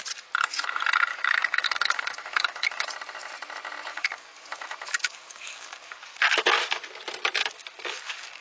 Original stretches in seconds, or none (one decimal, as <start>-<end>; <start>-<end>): 0.0-1.1; 2.8-3.9; 6.2-7.4